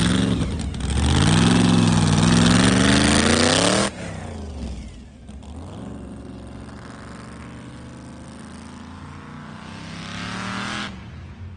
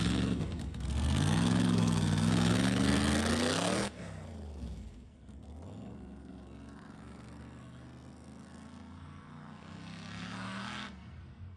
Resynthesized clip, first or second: second